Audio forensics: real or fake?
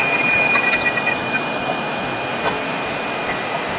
real